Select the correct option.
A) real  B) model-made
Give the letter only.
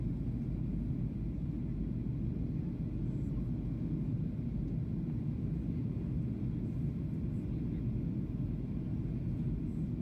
A